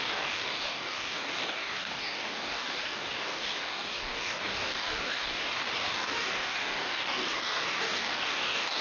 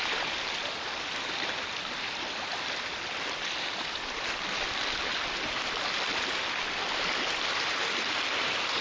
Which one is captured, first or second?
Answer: second